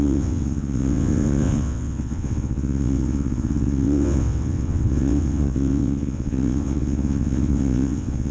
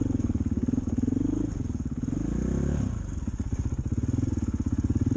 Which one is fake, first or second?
first